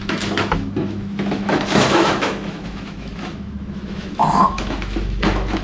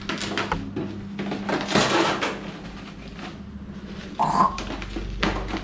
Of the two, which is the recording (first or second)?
second